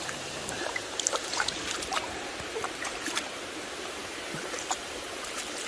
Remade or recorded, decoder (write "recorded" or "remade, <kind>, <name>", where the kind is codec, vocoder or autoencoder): remade, vocoder, BigVGAN v2